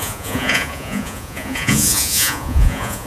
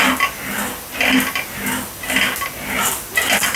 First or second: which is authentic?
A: second